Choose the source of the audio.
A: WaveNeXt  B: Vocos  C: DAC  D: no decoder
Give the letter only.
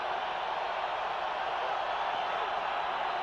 D